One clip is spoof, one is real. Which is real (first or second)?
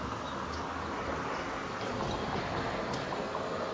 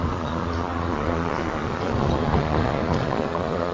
first